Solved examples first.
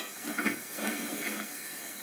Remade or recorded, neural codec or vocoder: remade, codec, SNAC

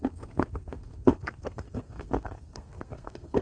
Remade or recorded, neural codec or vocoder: remade, codec, SNAC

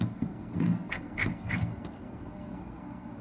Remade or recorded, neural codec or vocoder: remade, codec, SNAC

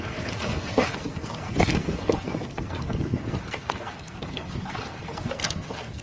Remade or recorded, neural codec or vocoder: remade, codec, SNAC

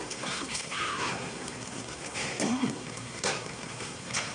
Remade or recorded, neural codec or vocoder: remade, codec, SNAC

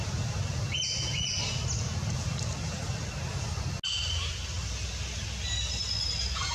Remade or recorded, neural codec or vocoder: recorded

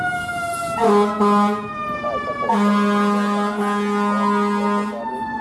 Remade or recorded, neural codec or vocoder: recorded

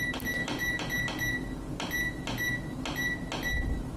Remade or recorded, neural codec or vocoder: recorded